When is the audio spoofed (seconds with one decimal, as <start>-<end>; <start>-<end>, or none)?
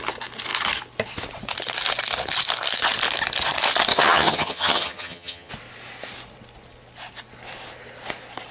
3.9-5.5